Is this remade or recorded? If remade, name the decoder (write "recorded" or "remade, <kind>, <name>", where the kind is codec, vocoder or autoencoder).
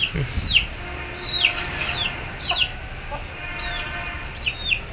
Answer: recorded